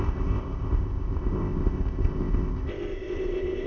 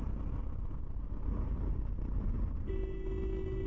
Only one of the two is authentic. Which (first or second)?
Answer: second